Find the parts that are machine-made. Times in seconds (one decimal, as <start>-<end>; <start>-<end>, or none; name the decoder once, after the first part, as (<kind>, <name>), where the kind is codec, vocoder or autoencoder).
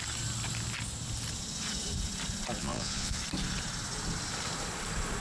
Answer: 2.6-3.2 (vocoder, Vocos)